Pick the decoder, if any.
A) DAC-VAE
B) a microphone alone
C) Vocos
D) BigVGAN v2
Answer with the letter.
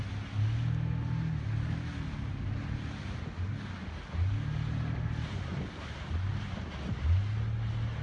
B